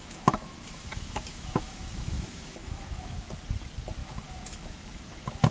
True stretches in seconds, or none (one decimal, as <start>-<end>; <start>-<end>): 3.3-4.0